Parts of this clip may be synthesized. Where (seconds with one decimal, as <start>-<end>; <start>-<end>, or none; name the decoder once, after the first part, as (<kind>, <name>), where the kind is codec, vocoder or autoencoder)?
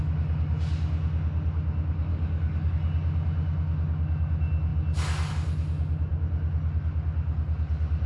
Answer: 2.1-2.7 (codec, DAC)